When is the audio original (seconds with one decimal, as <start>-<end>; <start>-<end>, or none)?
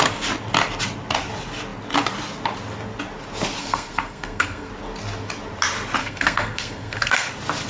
0.0-3.6; 4.7-6.0; 7.3-7.7